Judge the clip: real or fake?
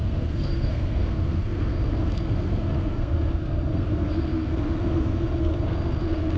fake